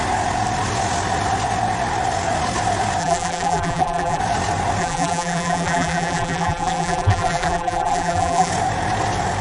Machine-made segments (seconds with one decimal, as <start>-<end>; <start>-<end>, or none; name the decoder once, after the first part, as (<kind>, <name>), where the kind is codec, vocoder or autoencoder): 3.0-4.2 (vocoder, BigVGAN v2); 4.8-8.5